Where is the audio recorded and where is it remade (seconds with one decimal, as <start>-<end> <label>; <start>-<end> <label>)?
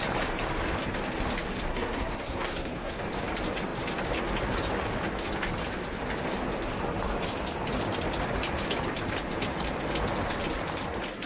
0.0-1.7 recorded; 1.7-3.0 remade; 3.0-11.3 recorded